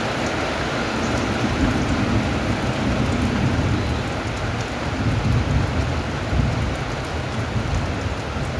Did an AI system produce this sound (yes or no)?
no